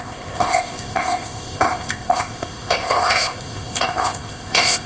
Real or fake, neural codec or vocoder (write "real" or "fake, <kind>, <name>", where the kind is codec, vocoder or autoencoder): fake, codec, ZipCodec